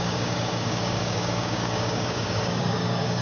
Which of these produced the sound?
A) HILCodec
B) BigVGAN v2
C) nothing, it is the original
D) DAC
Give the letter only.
D